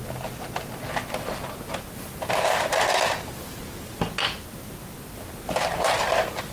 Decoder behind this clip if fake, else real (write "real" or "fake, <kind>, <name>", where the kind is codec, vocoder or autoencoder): real